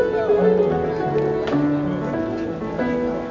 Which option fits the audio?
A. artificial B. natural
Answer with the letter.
B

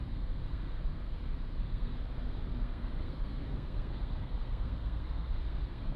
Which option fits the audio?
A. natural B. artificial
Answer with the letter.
B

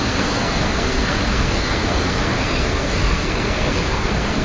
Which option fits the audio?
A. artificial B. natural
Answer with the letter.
A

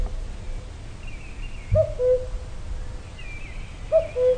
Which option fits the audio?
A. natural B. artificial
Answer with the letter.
A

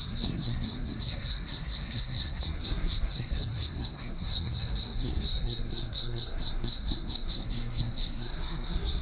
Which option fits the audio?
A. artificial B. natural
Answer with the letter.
A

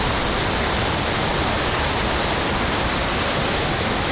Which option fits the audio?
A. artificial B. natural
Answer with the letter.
B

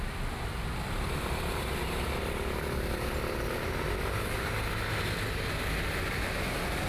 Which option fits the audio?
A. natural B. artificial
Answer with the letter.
A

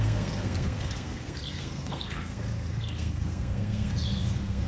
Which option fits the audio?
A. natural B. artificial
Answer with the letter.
B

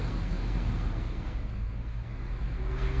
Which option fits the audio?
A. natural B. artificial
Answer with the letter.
B